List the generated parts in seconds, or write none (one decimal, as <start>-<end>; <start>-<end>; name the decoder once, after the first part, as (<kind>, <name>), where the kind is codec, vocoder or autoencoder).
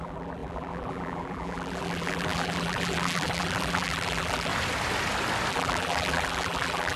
0.0-4.5 (vocoder, BigVGAN v2); 5.5-7.0